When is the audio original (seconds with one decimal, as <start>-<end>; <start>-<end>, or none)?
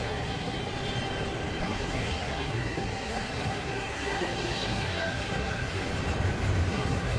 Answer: 0.6-1.6; 5.9-6.7